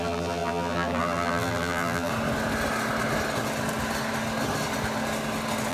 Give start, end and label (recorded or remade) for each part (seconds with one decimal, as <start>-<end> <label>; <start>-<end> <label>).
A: 0.0-2.1 remade; 2.1-5.7 recorded